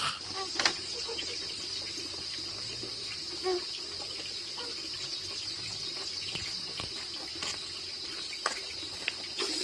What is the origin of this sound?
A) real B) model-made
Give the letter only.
A